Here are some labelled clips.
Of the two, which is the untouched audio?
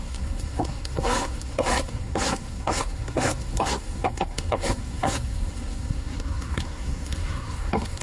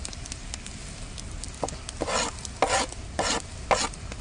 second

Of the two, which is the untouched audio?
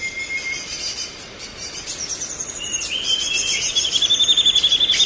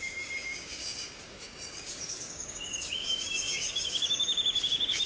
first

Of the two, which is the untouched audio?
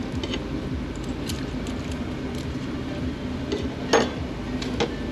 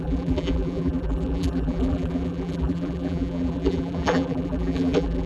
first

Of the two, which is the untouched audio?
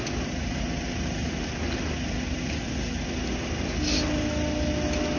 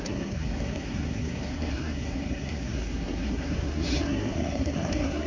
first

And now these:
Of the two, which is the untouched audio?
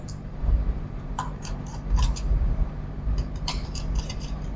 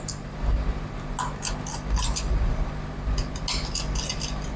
second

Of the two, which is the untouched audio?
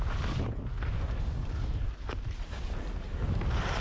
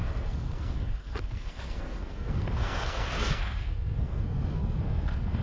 first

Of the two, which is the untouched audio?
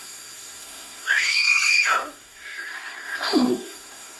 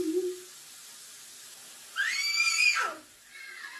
second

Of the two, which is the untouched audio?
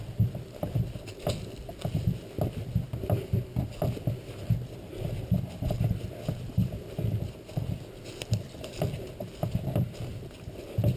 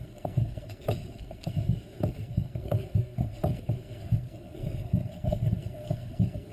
first